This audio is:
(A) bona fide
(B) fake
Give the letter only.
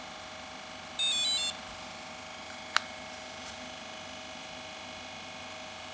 A